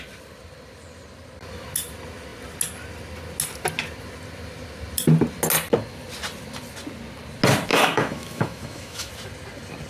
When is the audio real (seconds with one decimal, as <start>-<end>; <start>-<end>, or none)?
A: 0.0-7.7; 9.1-9.9